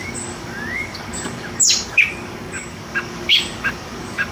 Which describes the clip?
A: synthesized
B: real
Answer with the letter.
A